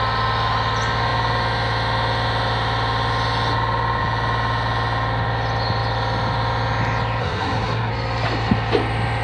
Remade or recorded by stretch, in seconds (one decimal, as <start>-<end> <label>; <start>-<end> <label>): 0.0-7.2 recorded; 7.2-7.9 remade; 7.9-9.2 recorded